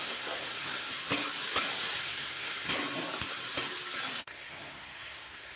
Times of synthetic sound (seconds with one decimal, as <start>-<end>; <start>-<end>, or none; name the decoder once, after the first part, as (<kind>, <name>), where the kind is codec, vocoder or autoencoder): 0.0-0.9 (codec, SNAC); 2.0-2.8; 4.2-5.6